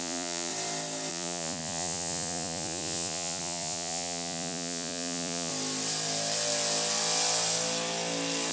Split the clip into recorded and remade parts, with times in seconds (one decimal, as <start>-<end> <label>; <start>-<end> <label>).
0.0-0.5 remade; 0.5-1.1 recorded; 1.1-5.5 remade; 5.5-8.5 recorded